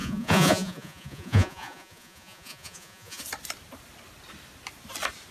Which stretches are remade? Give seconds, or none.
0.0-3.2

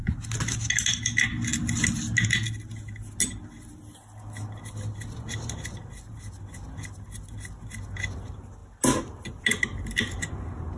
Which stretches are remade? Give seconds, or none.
none

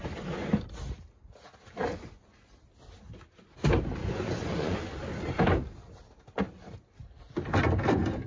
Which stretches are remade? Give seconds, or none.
1.9-2.6; 4.0-4.8

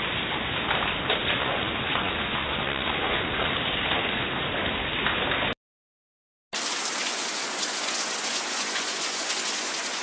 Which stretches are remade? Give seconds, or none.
1.2-3.5; 7.0-10.0

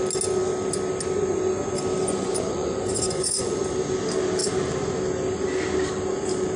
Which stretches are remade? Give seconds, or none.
2.0-3.6

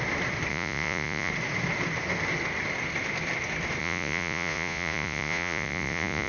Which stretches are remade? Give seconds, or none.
0.5-1.3; 3.8-6.3

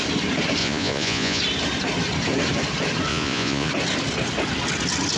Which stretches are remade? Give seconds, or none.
0.6-1.4; 3.1-3.7